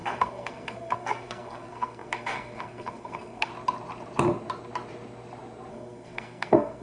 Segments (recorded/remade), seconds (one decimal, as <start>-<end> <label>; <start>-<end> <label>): 0.0-3.5 remade; 3.5-5.7 recorded; 5.7-6.8 remade